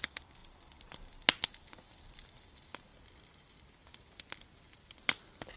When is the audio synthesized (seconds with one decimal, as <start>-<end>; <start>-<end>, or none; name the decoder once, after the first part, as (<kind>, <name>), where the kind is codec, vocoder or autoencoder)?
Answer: 0.4-0.9 (vocoder, BigVGAN v2); 2.9-5.6